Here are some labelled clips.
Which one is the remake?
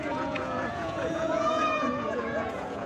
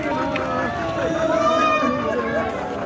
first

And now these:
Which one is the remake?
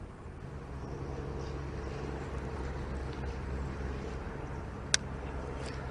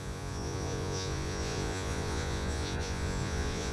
second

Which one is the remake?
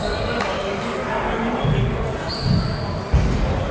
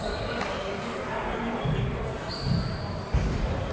second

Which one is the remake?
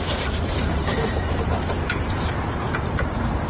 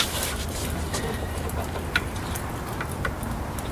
first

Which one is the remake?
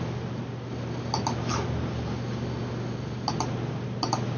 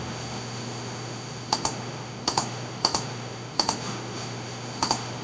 second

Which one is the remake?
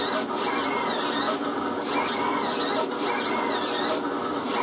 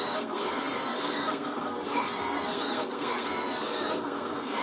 second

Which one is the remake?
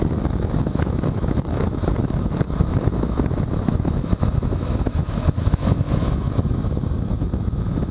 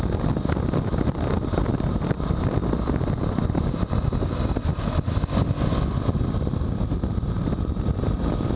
first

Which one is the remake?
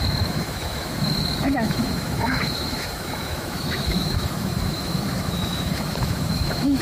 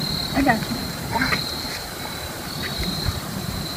first